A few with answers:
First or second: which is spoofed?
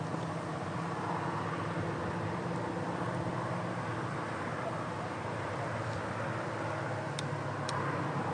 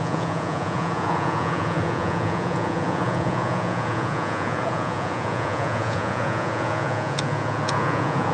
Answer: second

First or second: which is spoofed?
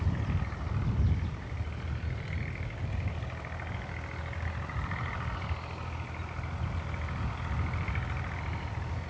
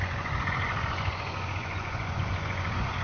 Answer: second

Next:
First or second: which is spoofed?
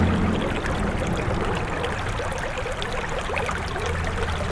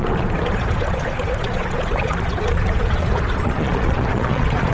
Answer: second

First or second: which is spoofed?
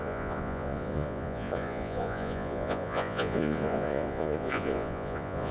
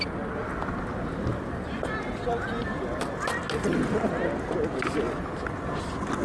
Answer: first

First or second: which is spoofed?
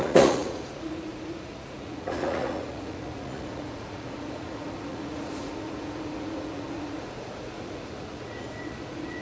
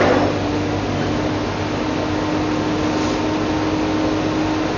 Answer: first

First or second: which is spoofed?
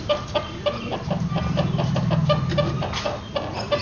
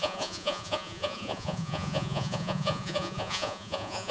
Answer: second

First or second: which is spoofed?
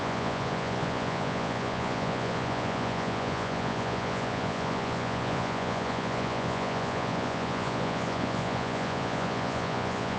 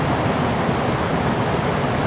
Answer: first